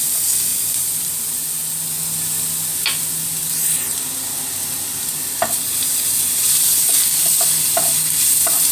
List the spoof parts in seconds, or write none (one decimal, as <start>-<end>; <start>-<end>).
0.5-1.1